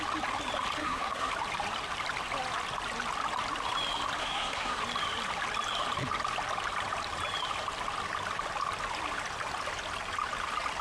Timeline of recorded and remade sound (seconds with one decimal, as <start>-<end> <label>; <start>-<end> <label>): 0.0-0.8 recorded; 0.8-1.3 remade; 1.3-4.2 recorded; 4.2-4.8 remade; 4.8-10.8 recorded

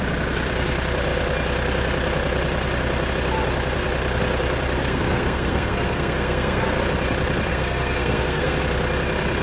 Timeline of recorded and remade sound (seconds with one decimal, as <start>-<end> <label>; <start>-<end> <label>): 0.0-4.8 recorded; 4.8-6.8 remade; 6.8-7.5 recorded; 7.5-8.6 remade; 8.6-9.4 recorded

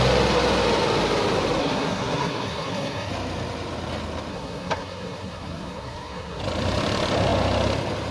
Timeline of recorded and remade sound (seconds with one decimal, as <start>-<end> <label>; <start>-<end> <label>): 0.0-1.6 recorded; 1.6-3.1 remade; 3.1-4.3 recorded; 4.3-6.4 remade; 6.4-8.1 recorded

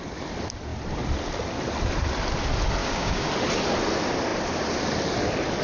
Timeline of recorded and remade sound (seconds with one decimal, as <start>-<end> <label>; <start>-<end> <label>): 0.0-2.8 recorded; 2.8-3.3 remade; 3.3-5.6 recorded

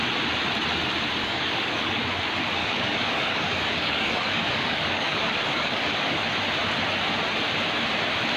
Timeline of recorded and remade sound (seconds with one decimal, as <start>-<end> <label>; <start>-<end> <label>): 0.0-1.2 recorded; 1.2-2.0 remade; 2.0-2.6 recorded; 2.6-6.2 remade; 6.2-8.4 recorded

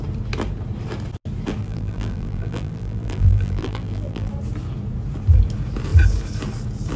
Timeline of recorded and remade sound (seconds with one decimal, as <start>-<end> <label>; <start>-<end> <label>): 0.0-1.6 recorded; 1.6-4.3 remade; 4.3-7.0 recorded

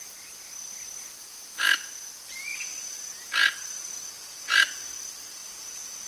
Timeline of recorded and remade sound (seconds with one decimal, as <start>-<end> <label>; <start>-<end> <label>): 0.0-1.2 recorded; 1.2-4.9 remade; 4.9-5.4 recorded; 5.4-6.1 remade